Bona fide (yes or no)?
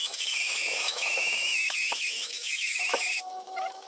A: no